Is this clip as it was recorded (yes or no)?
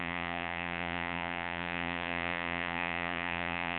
no